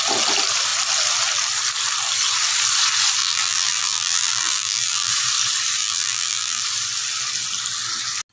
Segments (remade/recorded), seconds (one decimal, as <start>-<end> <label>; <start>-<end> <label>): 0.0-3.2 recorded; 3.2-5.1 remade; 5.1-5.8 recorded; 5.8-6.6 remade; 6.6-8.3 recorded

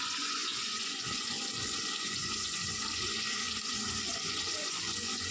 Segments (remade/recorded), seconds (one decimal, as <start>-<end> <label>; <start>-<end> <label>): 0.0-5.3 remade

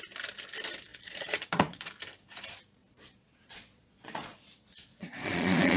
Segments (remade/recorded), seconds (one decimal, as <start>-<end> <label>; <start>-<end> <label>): 0.0-0.9 recorded; 0.9-1.9 remade; 1.9-2.8 recorded; 2.8-5.8 remade